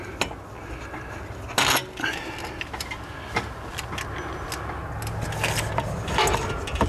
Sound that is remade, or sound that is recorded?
recorded